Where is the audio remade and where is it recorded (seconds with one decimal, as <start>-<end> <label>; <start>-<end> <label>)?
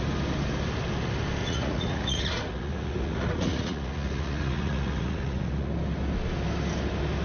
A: 0.0-1.4 recorded; 1.4-5.7 remade; 5.7-7.2 recorded